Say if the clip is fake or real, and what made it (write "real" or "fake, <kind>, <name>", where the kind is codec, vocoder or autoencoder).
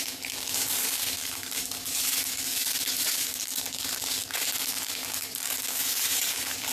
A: fake, codec, DAC